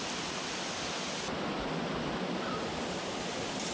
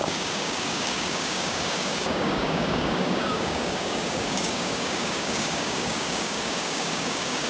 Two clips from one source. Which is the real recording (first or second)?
first